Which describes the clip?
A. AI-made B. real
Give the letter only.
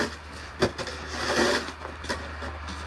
B